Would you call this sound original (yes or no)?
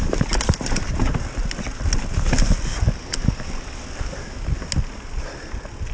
yes